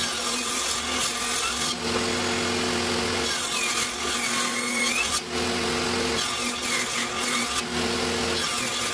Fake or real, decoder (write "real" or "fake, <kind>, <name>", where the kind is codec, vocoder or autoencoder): real